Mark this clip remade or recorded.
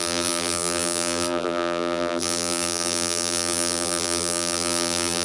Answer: remade